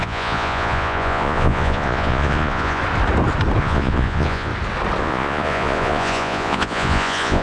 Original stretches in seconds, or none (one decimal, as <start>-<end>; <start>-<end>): 2.8-3.6; 4.5-5.0